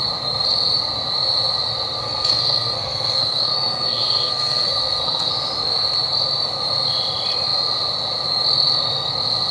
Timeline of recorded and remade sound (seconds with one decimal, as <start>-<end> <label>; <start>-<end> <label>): 0.0-2.0 recorded; 2.0-5.3 remade; 5.3-9.5 recorded